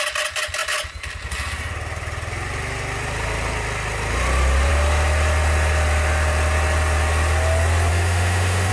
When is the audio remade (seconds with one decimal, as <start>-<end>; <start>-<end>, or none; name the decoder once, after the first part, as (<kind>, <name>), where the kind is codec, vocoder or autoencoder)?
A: 7.9-8.7 (autoencoder, DAC-VAE)